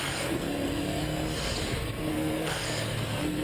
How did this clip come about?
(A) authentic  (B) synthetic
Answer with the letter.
B